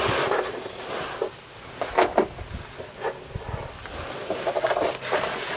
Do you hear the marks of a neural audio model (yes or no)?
no